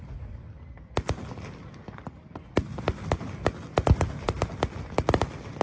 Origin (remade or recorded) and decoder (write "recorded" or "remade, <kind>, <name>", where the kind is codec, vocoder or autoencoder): recorded